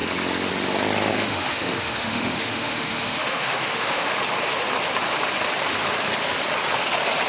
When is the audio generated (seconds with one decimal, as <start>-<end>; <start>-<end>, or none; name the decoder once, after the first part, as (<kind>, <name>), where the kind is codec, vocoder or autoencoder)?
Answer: 1.1-4.1 (autoencoder, DAC-VAE)